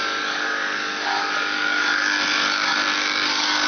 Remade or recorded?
remade